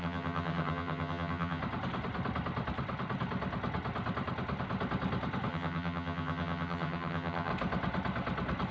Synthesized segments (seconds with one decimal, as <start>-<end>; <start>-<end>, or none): 0.0-1.6; 5.5-7.5